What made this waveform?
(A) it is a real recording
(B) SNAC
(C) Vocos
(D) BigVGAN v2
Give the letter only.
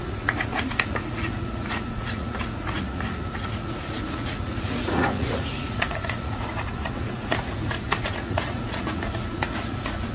C